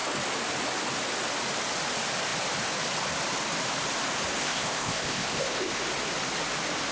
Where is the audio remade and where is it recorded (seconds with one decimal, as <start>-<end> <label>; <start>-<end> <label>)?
0.0-4.4 recorded; 4.4-5.8 remade; 5.8-6.9 recorded